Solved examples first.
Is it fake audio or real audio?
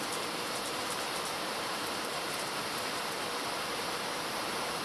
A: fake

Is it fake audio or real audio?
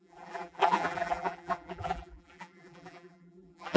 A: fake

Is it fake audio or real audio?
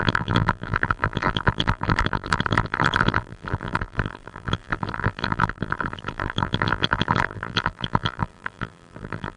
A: fake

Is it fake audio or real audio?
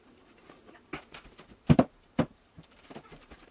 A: fake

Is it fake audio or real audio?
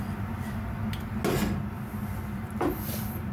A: real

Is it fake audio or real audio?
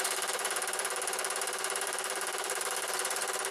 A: fake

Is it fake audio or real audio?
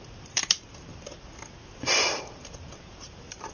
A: fake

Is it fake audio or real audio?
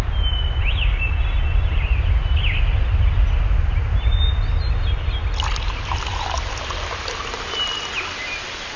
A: real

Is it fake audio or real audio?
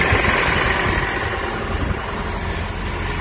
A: real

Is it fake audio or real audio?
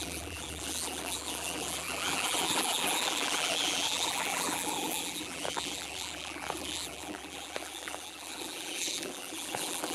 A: fake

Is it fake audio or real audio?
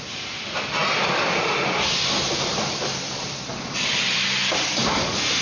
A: fake